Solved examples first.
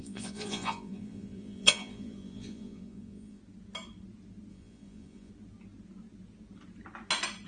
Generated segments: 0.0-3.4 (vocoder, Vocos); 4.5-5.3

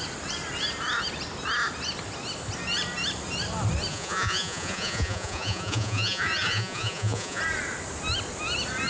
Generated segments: 3.9-7.4 (vocoder, Vocos)

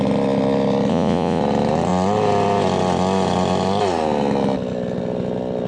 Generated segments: 0.9-1.4 (vocoder, Vocos)

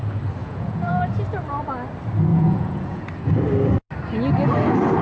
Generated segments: 0.4-1.0 (vocoder, Vocos); 2.3-3.0